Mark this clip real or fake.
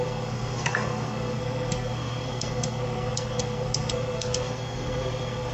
fake